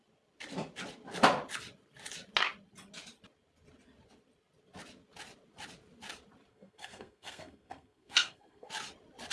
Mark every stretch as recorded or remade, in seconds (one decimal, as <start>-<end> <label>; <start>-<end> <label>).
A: 0.0-6.5 recorded; 6.5-8.7 remade; 8.7-9.3 recorded